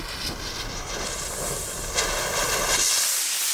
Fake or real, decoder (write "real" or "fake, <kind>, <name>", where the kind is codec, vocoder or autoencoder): real